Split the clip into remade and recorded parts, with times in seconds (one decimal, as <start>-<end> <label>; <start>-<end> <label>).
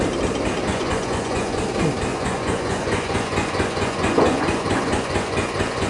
0.0-0.7 recorded; 0.7-1.6 remade; 1.6-2.1 recorded; 2.1-5.9 remade